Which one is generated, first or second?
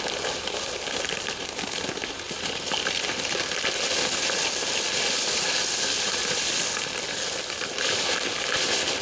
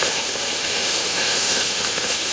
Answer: second